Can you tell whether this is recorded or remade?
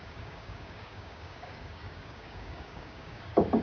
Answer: remade